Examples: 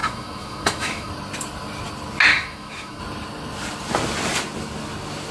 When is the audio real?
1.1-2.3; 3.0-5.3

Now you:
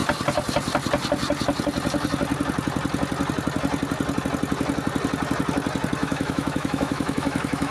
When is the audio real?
0.0-6.0

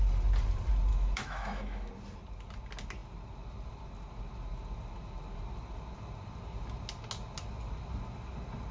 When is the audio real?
0.0-0.9; 1.9-8.7